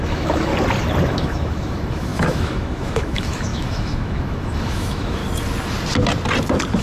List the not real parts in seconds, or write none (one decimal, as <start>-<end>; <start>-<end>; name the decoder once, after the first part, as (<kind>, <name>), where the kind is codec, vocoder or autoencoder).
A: 0.0-0.5 (autoencoder, DAC-VAE); 1.0-5.2